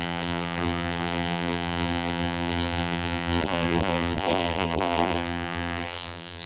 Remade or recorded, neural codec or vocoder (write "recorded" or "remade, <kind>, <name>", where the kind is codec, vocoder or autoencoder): remade, vocoder, BigVGAN v2